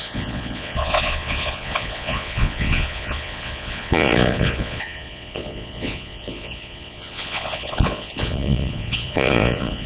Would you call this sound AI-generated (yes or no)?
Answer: yes